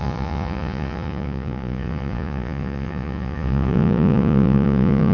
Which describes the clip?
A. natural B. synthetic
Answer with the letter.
B